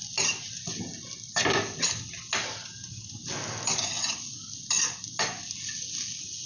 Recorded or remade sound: recorded